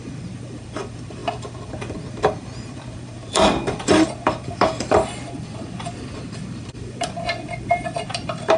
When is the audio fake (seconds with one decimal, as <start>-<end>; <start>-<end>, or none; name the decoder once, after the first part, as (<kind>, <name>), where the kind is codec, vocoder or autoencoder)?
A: 0.0-8.6 (vocoder, BigVGAN v2)